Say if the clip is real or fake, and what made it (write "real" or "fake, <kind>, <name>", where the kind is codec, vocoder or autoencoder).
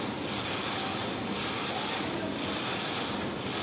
real